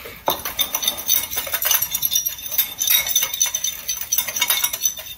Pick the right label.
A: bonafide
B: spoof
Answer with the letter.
A